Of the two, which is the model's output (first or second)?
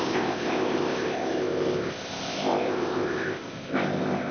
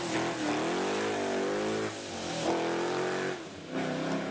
first